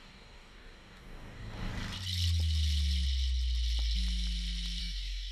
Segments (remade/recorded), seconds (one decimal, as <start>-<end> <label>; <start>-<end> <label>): 0.0-1.7 remade; 1.7-4.8 recorded; 4.8-5.3 remade